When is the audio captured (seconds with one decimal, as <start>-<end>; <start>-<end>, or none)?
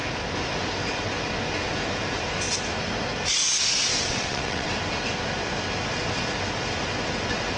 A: 0.0-3.9; 4.7-7.6